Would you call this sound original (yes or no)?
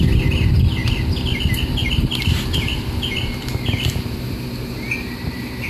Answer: yes